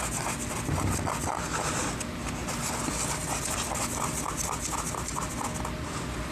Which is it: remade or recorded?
recorded